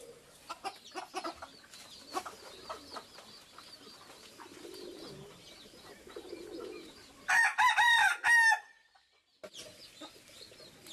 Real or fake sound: real